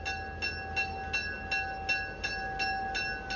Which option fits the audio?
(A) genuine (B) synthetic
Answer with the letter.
A